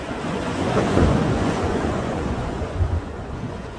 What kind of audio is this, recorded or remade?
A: remade